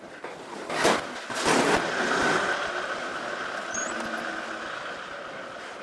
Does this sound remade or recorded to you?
recorded